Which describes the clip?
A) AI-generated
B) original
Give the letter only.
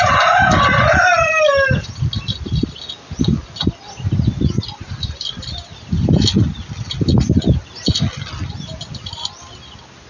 B